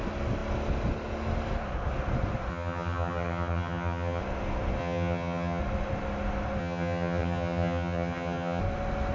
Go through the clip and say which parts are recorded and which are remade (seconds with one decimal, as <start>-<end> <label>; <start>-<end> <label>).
0.0-2.5 recorded; 2.5-4.2 remade; 4.2-4.8 recorded; 4.8-5.6 remade; 5.6-6.6 recorded; 6.6-8.6 remade; 8.6-9.1 recorded